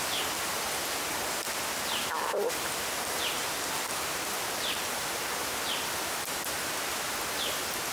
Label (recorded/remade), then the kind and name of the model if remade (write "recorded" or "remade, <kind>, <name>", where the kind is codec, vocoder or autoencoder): recorded